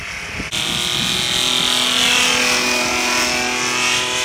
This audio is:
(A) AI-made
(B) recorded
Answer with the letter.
B